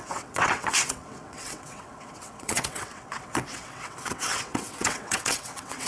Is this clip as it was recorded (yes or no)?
no